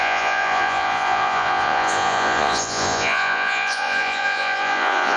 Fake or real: fake